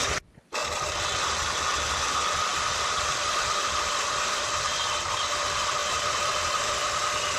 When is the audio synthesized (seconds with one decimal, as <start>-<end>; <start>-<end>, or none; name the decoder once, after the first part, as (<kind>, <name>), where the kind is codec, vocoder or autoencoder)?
2.5-5.3 (vocoder, BigVGAN v2); 5.8-6.7